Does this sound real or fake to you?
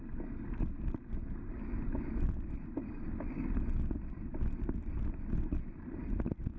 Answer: real